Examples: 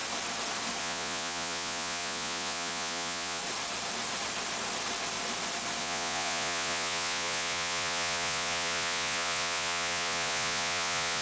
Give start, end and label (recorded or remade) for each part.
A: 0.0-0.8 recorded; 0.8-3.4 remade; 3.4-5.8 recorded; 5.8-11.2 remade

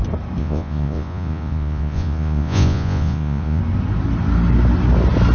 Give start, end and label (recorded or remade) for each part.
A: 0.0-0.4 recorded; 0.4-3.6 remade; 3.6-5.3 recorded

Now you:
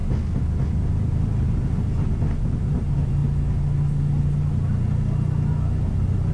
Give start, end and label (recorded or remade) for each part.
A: 0.0-6.3 recorded

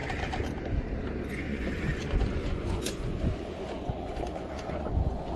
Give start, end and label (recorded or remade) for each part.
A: 0.0-1.3 recorded; 1.3-5.4 remade

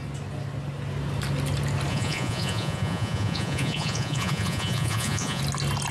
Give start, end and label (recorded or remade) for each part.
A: 0.0-1.9 recorded; 1.9-5.4 remade; 5.4-5.9 recorded

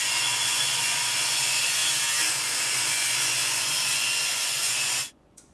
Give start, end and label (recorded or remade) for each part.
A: 0.0-1.8 remade; 1.8-2.3 recorded; 2.3-5.5 remade